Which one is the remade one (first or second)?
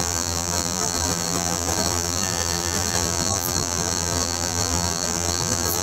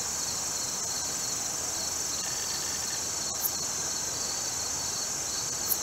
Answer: first